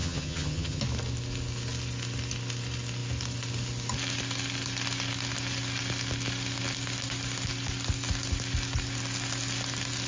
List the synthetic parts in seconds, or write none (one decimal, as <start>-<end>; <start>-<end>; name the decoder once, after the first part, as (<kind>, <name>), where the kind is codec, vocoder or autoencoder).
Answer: 0.0-0.8 (vocoder, HiFi-GAN)

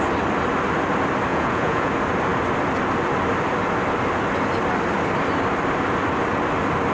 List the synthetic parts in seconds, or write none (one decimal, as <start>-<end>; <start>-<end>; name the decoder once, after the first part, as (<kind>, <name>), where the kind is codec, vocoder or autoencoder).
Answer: 1.3-1.9 (vocoder, Vocos)

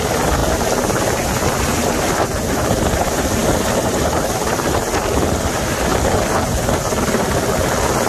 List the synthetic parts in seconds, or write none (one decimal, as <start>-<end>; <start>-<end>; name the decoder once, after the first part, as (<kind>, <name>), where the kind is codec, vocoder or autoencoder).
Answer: 5.9-7.0 (vocoder, BigVGAN v2)

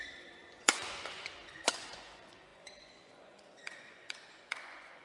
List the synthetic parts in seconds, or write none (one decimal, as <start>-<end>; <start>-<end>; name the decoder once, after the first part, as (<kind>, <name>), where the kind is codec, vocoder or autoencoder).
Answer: 0.0-5.0 (vocoder, Vocos)

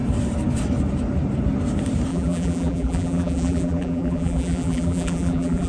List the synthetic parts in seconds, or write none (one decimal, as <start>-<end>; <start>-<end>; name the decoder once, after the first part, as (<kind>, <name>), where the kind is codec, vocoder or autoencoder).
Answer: 2.1-5.7 (vocoder, BigVGAN v2)

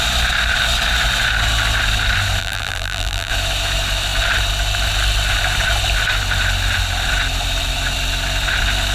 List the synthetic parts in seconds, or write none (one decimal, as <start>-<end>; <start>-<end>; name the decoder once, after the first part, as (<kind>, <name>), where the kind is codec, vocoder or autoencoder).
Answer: 2.4-3.3 (vocoder, BigVGAN v2)

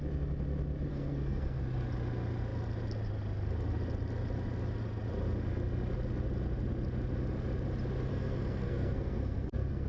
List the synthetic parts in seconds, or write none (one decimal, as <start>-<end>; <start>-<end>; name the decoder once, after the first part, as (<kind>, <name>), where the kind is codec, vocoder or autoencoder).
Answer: 0.9-1.6 (codec, SNAC); 8.1-9.9